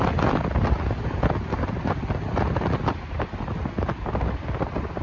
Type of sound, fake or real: real